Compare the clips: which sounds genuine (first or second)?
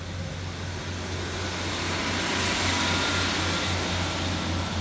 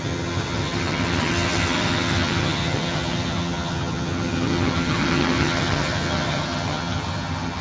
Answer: first